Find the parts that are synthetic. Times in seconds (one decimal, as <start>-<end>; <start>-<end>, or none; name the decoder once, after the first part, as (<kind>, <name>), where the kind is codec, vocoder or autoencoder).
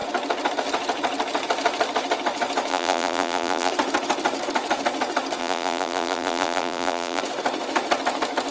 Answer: 2.7-3.7 (vocoder, BigVGAN v2); 5.4-7.2